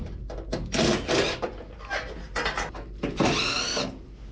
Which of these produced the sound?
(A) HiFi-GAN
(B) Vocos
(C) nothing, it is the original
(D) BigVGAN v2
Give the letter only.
C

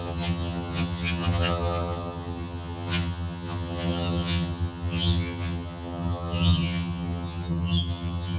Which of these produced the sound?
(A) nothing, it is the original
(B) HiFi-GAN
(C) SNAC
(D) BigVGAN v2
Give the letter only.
B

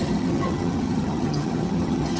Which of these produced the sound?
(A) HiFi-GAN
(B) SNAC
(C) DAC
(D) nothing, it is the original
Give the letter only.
A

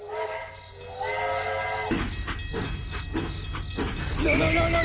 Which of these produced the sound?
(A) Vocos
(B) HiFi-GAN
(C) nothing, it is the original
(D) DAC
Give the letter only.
C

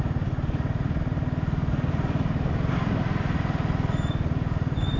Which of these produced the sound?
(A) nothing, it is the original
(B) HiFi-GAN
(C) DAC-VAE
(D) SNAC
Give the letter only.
A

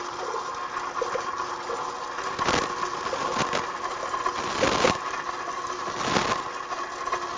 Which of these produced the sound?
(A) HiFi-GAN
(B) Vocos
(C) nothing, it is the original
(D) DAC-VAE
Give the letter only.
C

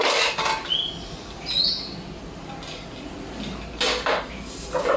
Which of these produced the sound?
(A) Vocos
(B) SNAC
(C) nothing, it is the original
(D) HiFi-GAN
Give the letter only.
C